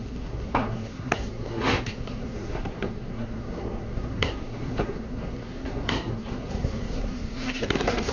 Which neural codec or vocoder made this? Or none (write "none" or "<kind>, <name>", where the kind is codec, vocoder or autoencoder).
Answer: codec, SNAC